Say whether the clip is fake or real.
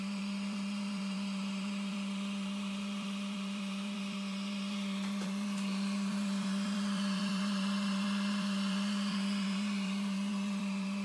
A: fake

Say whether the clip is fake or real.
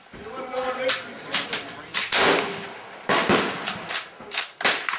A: real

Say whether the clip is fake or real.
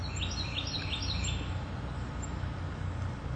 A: real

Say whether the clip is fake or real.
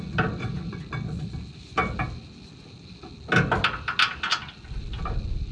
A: real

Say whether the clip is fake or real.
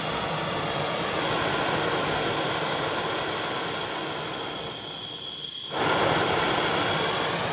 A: real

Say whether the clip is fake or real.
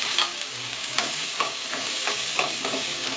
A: fake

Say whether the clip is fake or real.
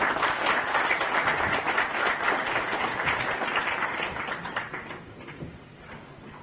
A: real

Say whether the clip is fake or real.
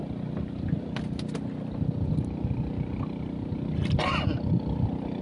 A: real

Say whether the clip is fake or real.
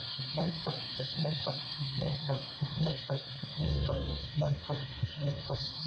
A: fake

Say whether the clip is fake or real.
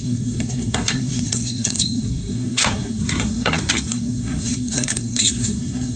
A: fake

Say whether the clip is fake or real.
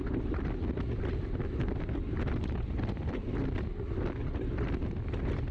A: real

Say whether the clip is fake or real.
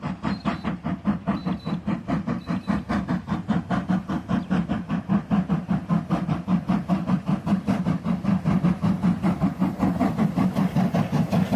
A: real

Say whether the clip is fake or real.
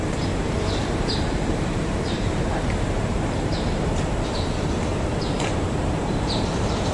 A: fake